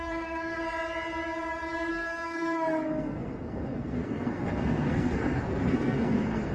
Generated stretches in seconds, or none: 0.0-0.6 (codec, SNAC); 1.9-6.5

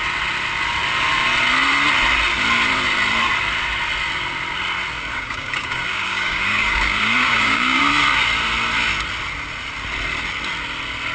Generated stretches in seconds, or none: 5.1-7.8 (codec, DAC)

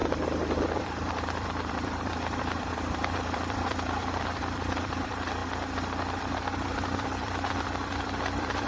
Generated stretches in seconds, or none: 0.6-5.4 (vocoder, BigVGAN v2); 6.2-8.7